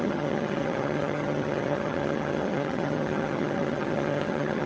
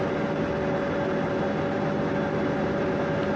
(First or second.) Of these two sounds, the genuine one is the second